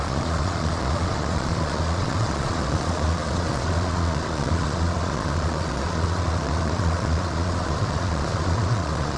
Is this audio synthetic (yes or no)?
yes